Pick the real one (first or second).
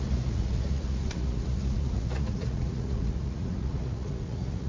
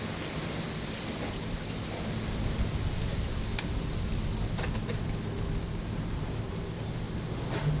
second